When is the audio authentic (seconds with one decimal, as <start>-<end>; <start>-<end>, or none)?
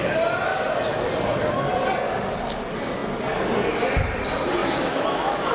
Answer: 0.0-0.5; 1.1-4.6